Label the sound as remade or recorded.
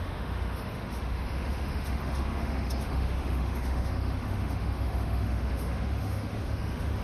remade